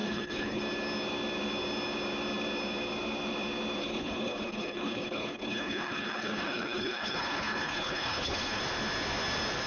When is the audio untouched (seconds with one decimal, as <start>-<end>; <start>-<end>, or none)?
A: 0.6-3.8; 8.6-9.7